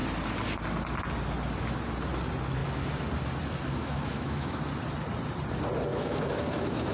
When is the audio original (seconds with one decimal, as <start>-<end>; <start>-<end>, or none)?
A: 0.0-3.8; 4.6-5.9